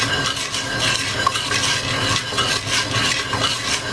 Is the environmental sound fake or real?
real